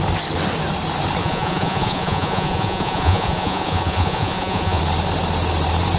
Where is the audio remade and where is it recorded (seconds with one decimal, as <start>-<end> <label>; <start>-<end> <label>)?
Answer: 0.0-1.2 recorded; 1.2-4.8 remade; 4.8-6.0 recorded

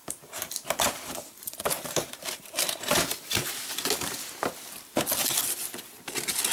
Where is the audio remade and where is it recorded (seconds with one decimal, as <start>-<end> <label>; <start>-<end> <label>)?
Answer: 0.0-3.5 remade; 3.5-6.5 recorded